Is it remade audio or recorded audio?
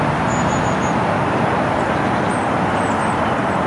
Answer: recorded